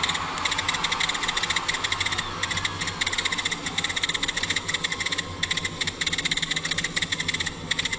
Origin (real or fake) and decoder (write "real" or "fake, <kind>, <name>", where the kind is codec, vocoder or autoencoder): real